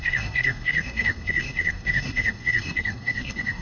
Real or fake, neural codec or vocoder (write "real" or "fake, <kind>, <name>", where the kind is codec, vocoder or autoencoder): fake, codec, SNAC